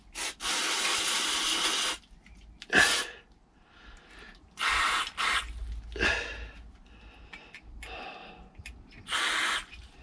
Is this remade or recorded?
recorded